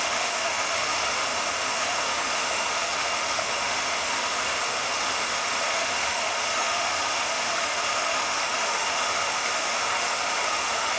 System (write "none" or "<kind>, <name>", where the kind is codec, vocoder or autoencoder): autoencoder, DAC-VAE